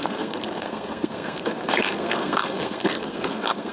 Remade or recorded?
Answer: remade